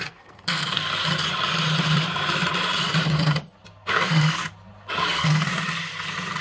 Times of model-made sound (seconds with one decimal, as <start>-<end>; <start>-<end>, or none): 0.0-0.9; 3.9-4.4; 5.1-5.5